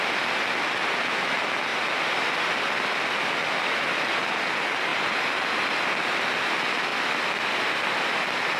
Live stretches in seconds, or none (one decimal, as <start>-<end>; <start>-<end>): 0.0-4.9; 5.7-6.9

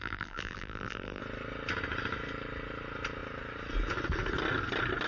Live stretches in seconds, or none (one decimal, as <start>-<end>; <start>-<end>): 1.2-5.1

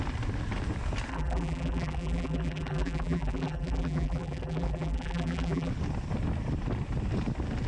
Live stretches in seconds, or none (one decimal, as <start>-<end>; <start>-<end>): 0.0-1.1; 5.7-7.7

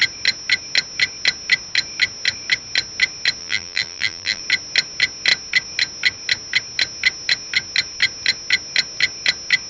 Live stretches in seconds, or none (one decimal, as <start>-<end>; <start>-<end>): 0.0-3.4; 4.4-9.7

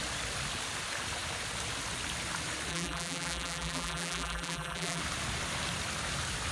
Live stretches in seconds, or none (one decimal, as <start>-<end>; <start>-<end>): 0.0-2.7; 5.0-6.5

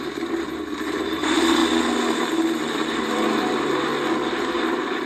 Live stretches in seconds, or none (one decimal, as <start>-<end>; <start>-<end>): 1.6-2.1; 3.9-4.4

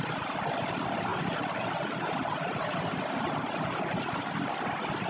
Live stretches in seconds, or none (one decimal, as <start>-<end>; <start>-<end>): 0.0-1.1; 4.2-5.1

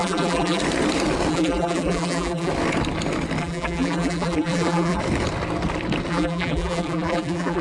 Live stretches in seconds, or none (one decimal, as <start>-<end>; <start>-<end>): 0.6-1.3; 2.5-3.4; 5.0-6.1